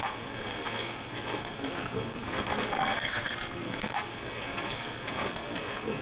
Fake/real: fake